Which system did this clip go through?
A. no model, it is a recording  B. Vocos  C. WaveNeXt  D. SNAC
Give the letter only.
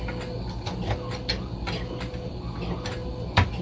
A